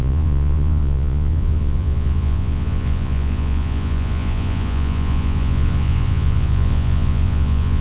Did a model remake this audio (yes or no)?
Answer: yes